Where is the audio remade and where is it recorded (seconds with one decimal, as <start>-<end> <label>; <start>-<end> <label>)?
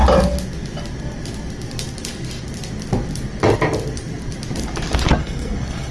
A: 0.0-5.2 recorded; 5.2-5.9 remade